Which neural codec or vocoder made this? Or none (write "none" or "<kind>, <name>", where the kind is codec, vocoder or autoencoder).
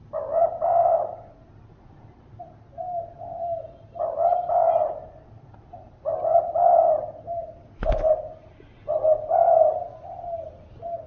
none